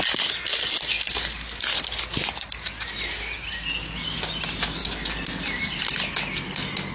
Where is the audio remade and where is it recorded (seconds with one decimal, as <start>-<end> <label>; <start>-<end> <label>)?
0.0-6.9 recorded